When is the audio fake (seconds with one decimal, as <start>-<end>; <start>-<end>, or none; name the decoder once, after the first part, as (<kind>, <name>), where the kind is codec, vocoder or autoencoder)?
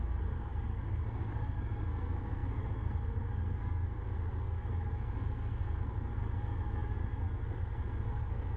0.0-8.6 (codec, SNAC)